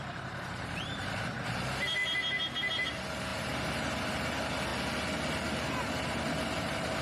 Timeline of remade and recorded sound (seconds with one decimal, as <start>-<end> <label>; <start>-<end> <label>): 0.0-2.0 remade; 2.0-2.6 recorded; 2.6-4.7 remade; 4.7-5.5 recorded; 5.5-7.0 remade